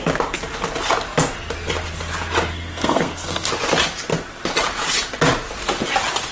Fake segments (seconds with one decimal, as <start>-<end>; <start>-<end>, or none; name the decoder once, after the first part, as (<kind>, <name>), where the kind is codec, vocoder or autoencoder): 2.5-3.5 (codec, SNAC)